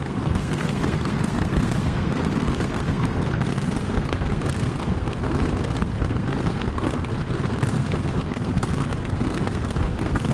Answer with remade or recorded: remade